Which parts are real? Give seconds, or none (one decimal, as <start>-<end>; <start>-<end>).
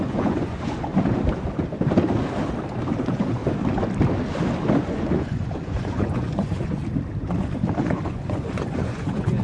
0.9-3.0; 3.4-4.9; 6.8-7.8